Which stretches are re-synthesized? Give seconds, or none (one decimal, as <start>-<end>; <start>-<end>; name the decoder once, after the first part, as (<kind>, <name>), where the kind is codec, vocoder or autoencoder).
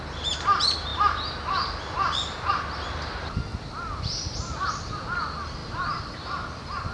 3.5-4.7 (vocoder, BigVGAN v2)